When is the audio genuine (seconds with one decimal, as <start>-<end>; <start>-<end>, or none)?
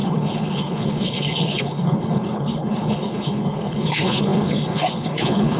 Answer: none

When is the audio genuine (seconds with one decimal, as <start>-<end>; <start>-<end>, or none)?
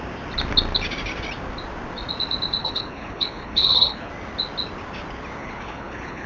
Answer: 0.0-2.6; 4.1-5.4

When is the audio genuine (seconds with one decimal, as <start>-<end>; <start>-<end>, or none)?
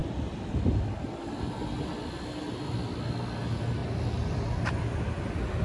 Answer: 0.0-3.8; 4.8-5.6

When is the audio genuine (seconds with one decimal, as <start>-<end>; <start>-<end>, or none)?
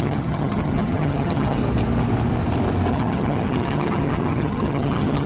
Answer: 1.6-2.9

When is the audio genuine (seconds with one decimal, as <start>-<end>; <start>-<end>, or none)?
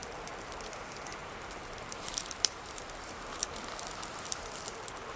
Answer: 0.0-1.2; 4.3-5.2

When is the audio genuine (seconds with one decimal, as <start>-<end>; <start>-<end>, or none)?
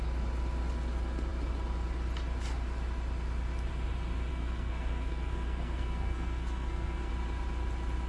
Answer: 0.0-4.3; 7.1-8.1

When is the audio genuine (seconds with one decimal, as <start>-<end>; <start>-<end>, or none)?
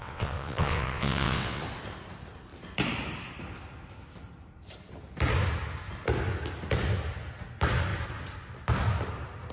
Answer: 1.6-9.5